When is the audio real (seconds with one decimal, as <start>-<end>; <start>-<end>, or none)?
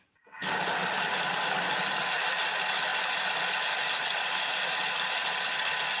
0.0-0.4; 1.7-2.9; 5.6-6.0